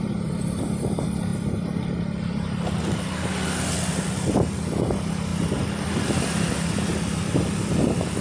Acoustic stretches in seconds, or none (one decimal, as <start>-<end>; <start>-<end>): 0.0-8.2